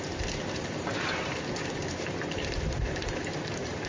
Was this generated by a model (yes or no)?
yes